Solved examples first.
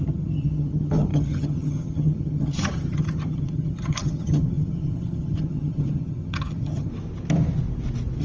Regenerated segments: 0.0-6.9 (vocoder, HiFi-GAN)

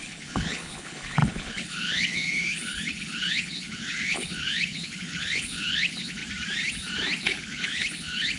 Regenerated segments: 0.0-6.2 (codec, HILCodec); 7.2-8.4